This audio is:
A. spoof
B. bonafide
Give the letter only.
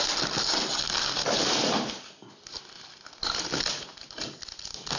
B